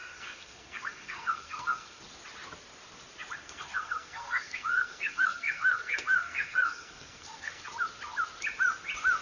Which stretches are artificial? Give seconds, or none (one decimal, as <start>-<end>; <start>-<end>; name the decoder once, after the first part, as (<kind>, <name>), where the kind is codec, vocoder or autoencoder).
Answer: 0.0-2.0 (codec, SNAC); 3.4-7.7